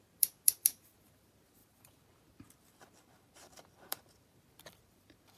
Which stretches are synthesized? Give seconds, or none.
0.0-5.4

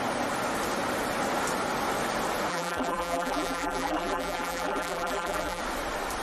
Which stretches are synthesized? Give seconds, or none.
2.5-5.6